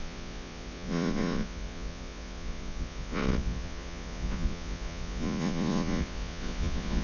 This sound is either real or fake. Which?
fake